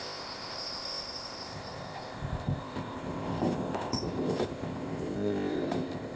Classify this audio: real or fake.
fake